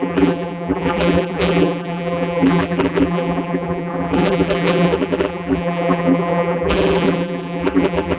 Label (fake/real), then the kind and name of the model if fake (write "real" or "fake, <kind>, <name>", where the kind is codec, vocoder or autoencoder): fake, vocoder, BigVGAN v2